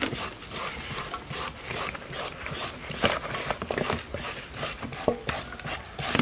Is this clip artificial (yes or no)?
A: no